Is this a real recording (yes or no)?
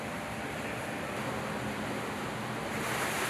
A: yes